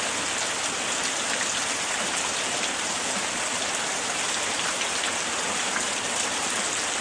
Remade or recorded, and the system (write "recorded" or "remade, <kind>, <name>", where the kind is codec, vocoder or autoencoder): recorded